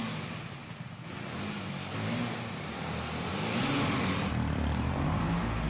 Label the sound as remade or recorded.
recorded